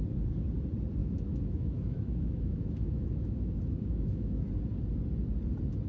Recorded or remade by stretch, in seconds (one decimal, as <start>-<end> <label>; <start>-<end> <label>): 0.0-1.0 recorded; 1.0-4.5 remade; 4.5-5.9 recorded